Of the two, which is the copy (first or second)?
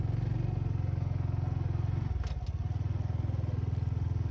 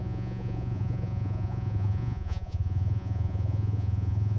second